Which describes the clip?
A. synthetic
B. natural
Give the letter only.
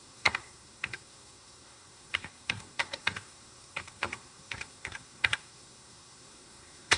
A